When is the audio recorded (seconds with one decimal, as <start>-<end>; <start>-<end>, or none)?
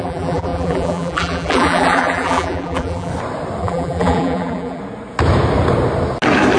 3.1-3.6; 4.8-6.6